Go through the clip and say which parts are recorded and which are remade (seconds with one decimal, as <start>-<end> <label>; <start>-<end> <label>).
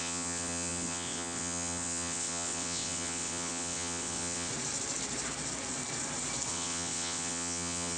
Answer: 0.0-4.5 remade; 4.5-6.5 recorded; 6.5-8.0 remade